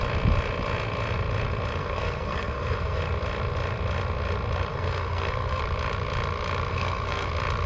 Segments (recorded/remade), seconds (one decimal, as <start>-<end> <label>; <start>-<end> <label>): 0.0-1.8 recorded; 1.8-3.0 remade; 3.0-4.7 recorded; 4.7-5.6 remade; 5.6-6.7 recorded; 6.7-7.3 remade; 7.3-7.7 recorded